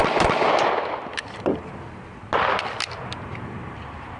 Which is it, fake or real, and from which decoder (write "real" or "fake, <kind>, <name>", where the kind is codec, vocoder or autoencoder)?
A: real